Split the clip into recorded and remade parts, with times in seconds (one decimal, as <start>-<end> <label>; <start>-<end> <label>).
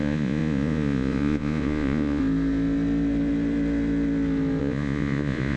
0.0-2.2 remade; 2.2-4.6 recorded; 4.6-5.6 remade